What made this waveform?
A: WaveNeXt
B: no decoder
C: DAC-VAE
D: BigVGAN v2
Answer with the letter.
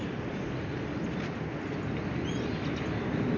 B